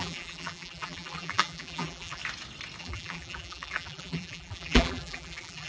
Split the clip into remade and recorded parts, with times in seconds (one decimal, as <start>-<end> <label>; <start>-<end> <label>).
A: 0.0-2.2 remade; 2.2-2.8 recorded; 2.8-5.7 remade